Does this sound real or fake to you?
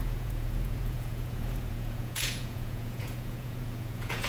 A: fake